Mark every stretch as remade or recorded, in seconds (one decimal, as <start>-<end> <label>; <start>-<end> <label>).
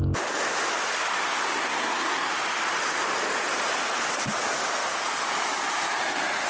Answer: 0.0-1.3 recorded; 1.3-2.3 remade; 2.3-6.5 recorded